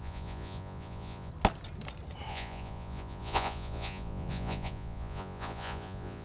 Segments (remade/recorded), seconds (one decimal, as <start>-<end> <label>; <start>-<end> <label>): 0.0-1.3 remade; 1.3-2.3 recorded; 2.3-6.2 remade